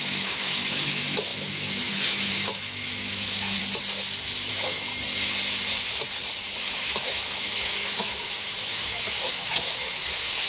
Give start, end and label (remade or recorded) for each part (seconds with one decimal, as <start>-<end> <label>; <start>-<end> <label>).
0.0-3.6 remade; 3.6-4.5 recorded; 4.5-4.9 remade; 4.9-6.6 recorded; 6.6-10.5 remade